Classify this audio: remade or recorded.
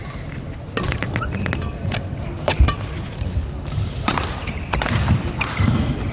recorded